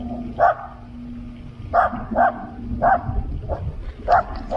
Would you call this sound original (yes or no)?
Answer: yes